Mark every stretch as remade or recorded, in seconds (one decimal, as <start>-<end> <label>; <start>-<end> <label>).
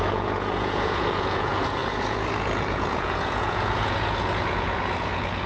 0.0-5.5 remade